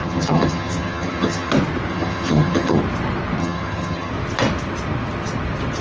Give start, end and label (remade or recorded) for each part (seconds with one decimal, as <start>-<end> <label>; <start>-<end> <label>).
0.0-1.5 remade; 1.5-1.9 recorded; 1.9-2.8 remade; 2.8-3.4 recorded; 3.4-4.1 remade; 4.1-5.8 recorded